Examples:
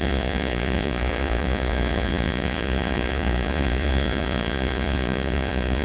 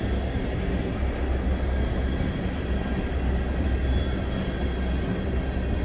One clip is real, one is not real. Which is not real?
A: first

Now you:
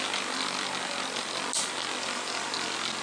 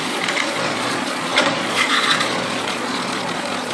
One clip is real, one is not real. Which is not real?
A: second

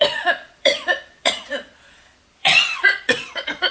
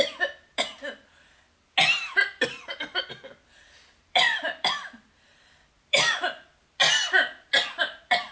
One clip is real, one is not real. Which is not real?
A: first